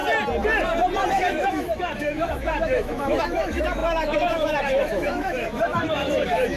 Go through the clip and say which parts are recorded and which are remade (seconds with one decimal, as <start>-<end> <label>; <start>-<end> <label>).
0.0-1.1 recorded; 1.1-6.6 remade